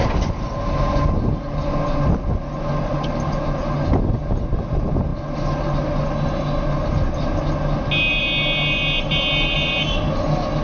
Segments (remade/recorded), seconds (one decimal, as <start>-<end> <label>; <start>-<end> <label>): 0.0-10.6 recorded